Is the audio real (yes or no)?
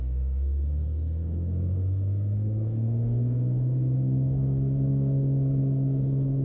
no